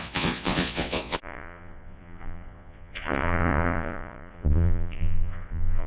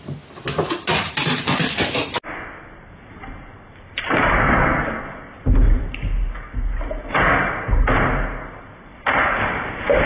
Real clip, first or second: second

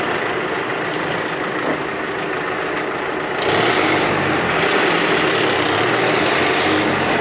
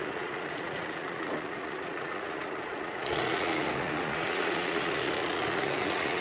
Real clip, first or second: first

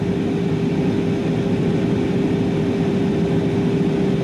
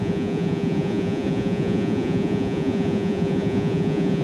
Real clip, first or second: first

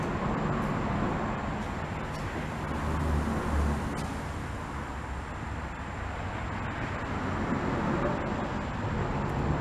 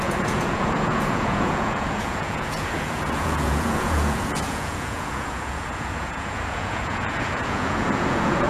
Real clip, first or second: first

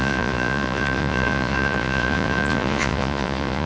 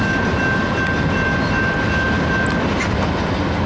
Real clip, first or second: second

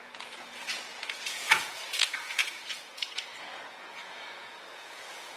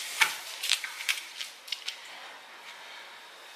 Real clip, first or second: second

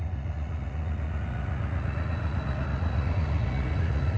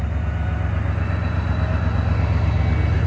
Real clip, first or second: second